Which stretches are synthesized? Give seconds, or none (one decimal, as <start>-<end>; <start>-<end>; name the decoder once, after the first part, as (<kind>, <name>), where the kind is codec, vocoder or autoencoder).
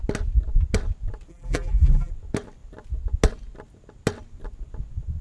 1.3-2.1 (vocoder, BigVGAN v2)